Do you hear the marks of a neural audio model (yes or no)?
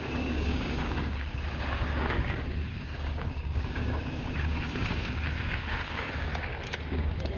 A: yes